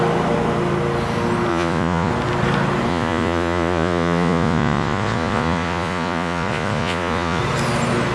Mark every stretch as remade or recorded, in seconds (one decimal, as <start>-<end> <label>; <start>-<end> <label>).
0.0-1.5 recorded; 1.5-2.1 remade; 2.1-2.9 recorded; 2.9-7.4 remade; 7.4-8.1 recorded